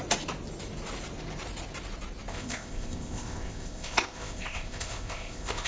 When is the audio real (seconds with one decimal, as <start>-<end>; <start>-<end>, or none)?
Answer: 0.0-2.3